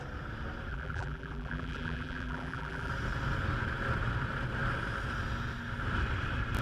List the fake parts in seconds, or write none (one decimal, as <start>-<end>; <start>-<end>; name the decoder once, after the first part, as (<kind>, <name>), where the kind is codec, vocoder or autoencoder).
0.7-2.9 (vocoder, BigVGAN v2)